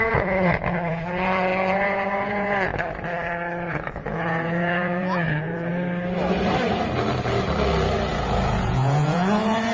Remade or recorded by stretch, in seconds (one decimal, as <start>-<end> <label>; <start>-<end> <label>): 0.0-2.7 remade; 2.7-3.7 recorded; 3.7-5.7 remade; 5.7-8.1 recorded; 8.1-9.7 remade